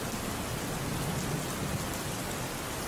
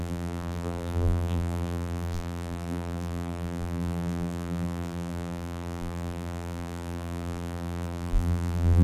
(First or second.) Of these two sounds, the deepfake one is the second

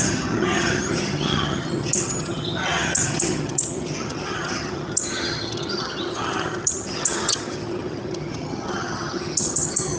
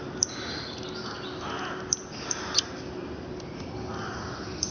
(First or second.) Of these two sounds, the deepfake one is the first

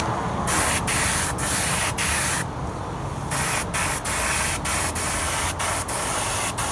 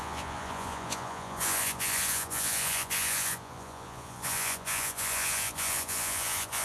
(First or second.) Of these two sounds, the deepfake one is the second